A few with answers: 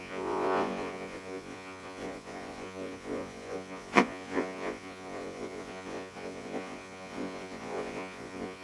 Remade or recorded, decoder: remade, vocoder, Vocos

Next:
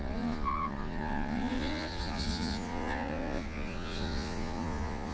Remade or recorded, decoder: remade, vocoder, Vocos